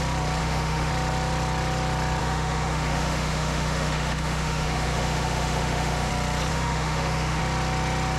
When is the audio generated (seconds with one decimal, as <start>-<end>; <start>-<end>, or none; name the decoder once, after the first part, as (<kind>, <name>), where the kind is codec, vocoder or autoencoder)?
0.4-0.9 (autoencoder, DAC-VAE); 2.2-6.1; 6.5-7.4